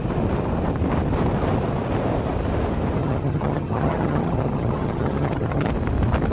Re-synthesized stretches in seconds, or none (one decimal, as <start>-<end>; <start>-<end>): 3.0-5.7